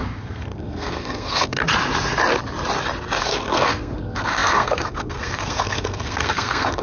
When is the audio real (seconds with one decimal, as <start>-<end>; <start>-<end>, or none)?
1.6-3.2